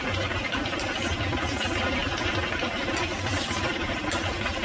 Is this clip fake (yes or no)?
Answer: no